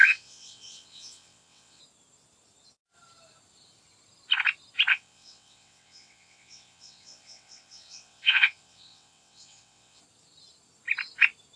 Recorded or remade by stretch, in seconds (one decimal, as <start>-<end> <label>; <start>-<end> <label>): 0.0-1.8 remade; 1.8-4.9 recorded; 4.9-10.0 remade; 10.0-11.6 recorded